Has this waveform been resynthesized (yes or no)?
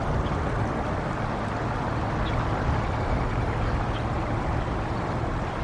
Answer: no